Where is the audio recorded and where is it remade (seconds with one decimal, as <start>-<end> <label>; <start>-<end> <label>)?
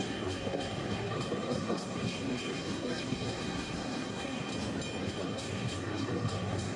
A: 0.0-4.5 remade; 4.5-5.0 recorded; 5.0-6.8 remade